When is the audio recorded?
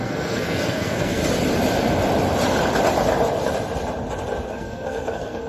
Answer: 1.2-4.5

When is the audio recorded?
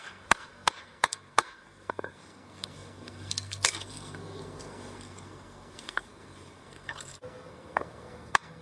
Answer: none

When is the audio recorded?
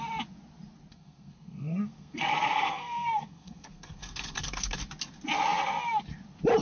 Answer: 0.0-0.9; 4.8-6.6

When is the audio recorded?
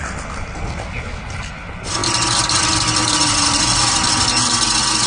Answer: 0.0-5.1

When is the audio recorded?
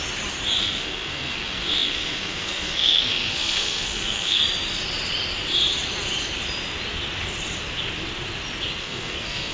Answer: 0.0-0.6; 4.4-8.8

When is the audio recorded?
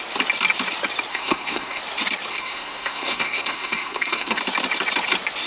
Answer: 0.0-1.1; 1.8-2.3; 4.4-5.5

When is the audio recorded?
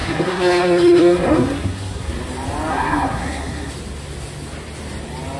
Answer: 2.1-2.7; 3.7-5.4